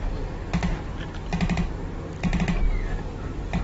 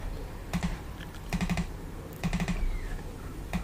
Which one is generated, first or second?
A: second